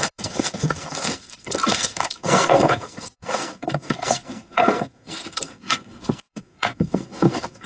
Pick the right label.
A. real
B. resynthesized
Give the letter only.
B